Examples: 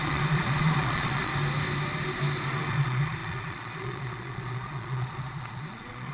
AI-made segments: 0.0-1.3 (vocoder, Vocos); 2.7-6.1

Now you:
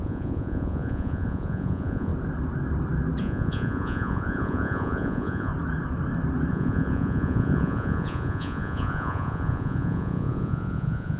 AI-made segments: 0.0-2.1 (vocoder, Vocos); 3.2-5.5; 6.5-11.2

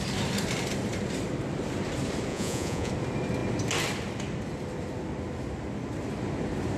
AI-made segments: 2.3-2.9 (vocoder, Vocos)

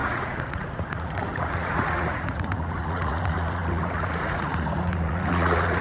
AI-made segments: 0.0-5.8 (vocoder, Vocos)

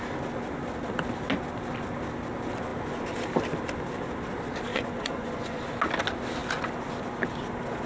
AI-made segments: 4.7-5.6 (vocoder, Vocos)

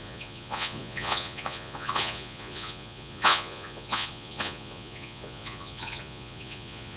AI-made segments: 0.0-7.0 (vocoder, Vocos)